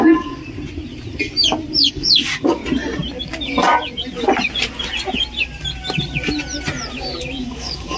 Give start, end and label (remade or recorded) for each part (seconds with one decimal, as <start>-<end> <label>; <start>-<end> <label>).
0.0-0.4 remade; 0.4-1.9 recorded; 1.9-2.6 remade; 2.6-7.4 recorded; 7.4-8.0 remade